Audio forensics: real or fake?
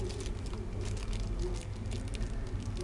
real